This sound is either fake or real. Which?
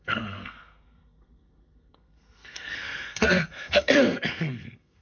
fake